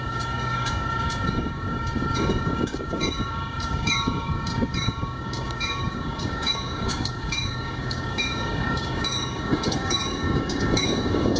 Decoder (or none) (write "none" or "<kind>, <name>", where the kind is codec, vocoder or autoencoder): codec, DAC